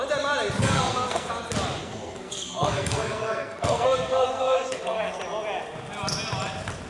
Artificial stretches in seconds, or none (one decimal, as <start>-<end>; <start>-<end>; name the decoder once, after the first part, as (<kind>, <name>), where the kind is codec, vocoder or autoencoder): 0.6-1.3 (codec, SNAC); 1.8-5.2